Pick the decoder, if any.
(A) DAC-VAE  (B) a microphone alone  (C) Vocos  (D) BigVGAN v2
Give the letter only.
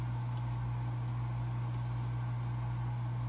B